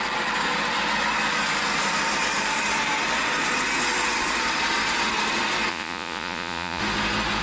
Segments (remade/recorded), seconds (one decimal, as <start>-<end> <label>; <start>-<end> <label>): 0.0-5.7 recorded; 5.7-6.8 remade; 6.8-7.4 recorded